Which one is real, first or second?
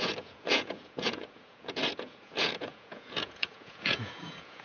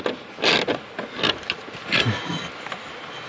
second